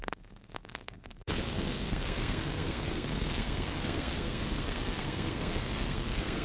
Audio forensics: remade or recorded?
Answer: remade